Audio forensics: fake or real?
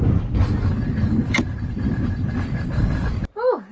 real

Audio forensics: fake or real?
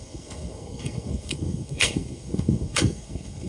fake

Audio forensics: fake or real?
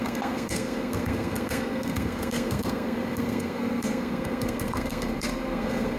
fake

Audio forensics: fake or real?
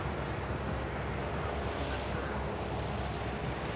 real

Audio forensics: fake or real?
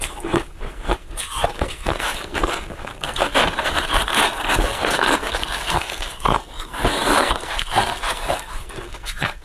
fake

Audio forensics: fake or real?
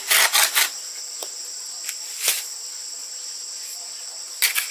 real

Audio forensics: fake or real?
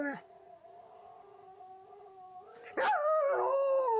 real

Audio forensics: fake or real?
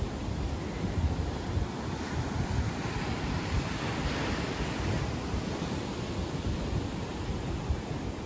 real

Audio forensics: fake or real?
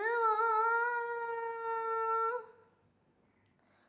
real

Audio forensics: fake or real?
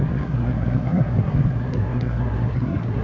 fake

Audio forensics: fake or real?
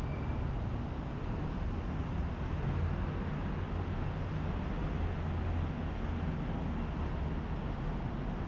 real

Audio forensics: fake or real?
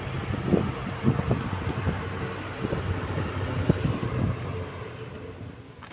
real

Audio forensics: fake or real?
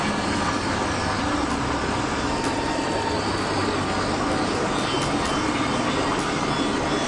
real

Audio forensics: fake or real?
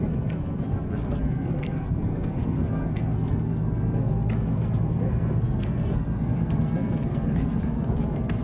fake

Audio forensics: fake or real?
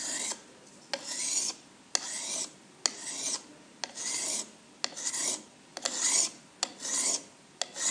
real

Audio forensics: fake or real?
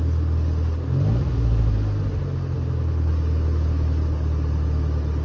real